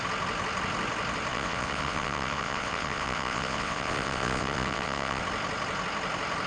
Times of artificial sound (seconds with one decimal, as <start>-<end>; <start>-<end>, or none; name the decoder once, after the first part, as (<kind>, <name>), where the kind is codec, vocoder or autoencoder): 1.3-5.2 (vocoder, WaveNeXt)